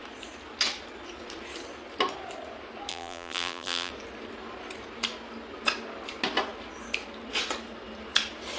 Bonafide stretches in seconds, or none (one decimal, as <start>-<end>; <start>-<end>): 0.0-2.9; 3.9-8.6